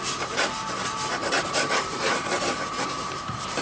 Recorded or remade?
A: remade